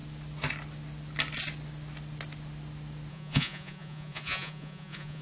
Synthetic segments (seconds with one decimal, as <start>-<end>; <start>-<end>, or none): 3.1-5.2